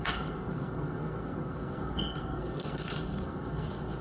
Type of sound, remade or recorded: remade